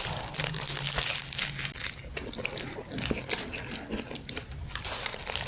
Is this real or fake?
real